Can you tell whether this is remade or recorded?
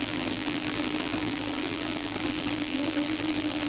remade